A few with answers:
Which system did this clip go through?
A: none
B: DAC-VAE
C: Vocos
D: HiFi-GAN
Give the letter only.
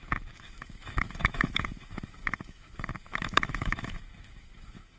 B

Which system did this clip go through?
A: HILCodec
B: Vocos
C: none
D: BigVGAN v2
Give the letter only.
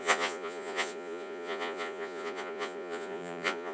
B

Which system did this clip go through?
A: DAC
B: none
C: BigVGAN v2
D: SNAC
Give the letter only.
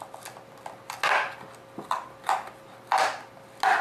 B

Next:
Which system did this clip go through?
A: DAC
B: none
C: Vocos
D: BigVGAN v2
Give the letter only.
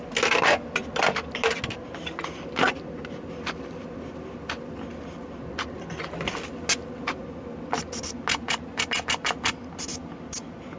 B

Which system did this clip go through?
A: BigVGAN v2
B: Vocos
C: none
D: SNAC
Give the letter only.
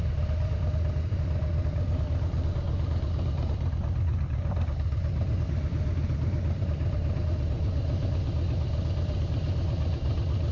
C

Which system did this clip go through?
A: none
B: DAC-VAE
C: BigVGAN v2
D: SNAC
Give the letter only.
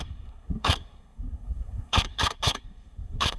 D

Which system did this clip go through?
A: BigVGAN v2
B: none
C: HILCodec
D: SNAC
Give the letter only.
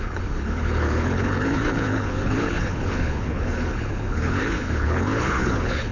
C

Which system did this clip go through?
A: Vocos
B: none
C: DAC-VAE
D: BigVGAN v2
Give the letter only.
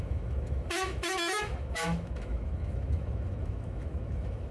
C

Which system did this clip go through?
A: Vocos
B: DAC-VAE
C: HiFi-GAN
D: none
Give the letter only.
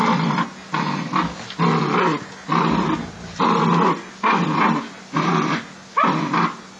D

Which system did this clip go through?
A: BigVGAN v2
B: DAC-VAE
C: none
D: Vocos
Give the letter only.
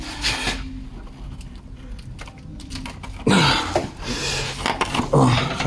C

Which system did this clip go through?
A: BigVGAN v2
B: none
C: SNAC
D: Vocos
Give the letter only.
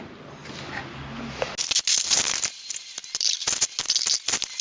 B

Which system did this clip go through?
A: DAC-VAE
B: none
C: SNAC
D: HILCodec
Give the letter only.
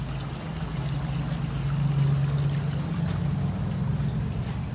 B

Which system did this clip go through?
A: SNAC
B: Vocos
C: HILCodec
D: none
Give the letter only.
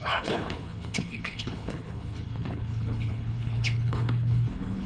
C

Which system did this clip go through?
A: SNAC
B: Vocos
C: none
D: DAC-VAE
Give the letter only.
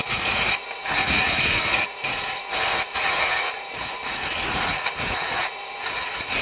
B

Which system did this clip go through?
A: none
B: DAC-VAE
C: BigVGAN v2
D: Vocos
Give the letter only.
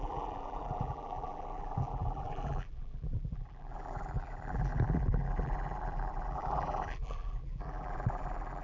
C